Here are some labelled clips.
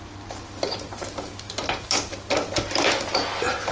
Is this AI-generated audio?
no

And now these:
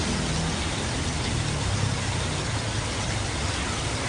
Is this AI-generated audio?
no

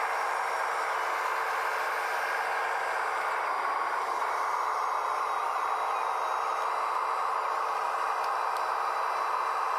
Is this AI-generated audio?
no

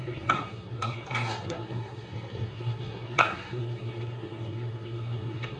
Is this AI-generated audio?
yes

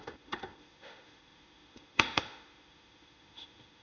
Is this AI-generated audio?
yes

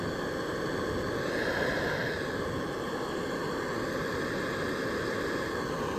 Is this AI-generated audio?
no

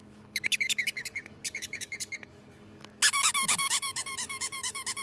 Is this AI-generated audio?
yes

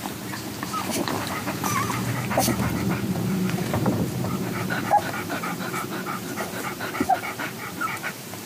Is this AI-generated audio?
yes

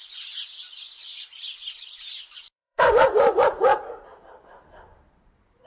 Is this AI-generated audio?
yes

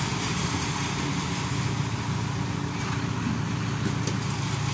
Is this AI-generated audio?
no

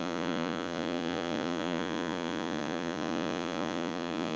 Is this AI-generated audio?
yes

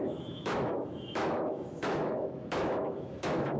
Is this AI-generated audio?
yes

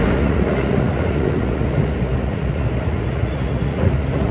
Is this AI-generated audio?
yes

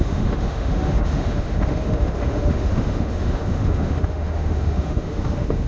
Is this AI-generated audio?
yes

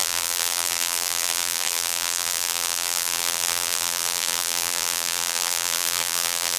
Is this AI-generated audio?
yes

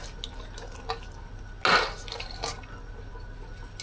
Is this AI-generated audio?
no